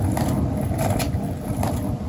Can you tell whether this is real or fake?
real